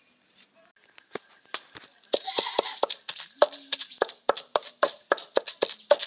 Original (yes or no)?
yes